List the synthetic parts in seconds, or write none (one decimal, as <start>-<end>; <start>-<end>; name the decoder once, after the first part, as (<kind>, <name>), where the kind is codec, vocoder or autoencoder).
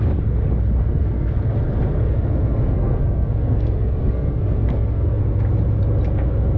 0.8-1.4 (codec, SNAC); 2.0-5.2